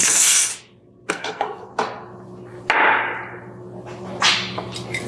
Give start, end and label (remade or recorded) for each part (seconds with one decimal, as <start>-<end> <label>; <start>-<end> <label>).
0.0-0.5 remade; 0.5-1.1 recorded; 1.1-1.7 remade; 1.7-5.1 recorded